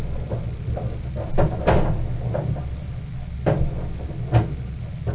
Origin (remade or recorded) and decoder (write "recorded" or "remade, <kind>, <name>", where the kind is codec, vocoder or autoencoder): recorded